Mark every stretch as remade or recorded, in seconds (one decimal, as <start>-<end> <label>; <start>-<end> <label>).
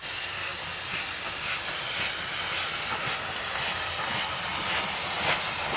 0.0-5.8 recorded